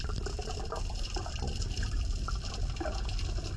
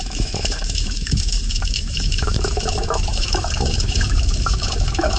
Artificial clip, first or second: second